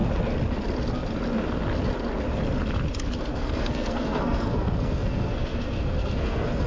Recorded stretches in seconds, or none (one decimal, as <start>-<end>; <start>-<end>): 0.0-3.2